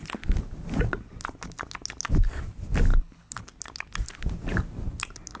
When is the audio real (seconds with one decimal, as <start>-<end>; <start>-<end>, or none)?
0.0-2.9; 3.4-5.4